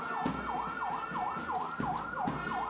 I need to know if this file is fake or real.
real